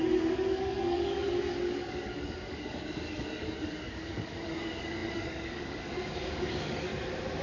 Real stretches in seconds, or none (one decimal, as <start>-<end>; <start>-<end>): 6.9-7.4